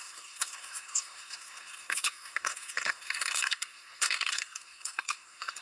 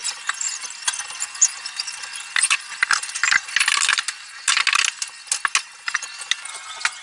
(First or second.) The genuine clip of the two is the second